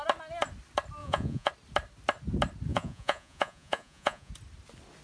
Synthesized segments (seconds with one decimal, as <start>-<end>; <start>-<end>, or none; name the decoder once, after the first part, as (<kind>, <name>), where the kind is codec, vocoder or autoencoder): 1.0-1.5 (vocoder, Vocos); 2.7-4.3